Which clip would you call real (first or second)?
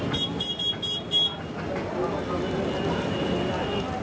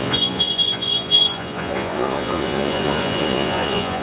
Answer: first